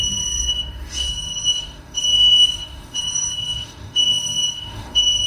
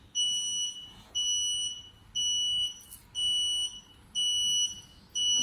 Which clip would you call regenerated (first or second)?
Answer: first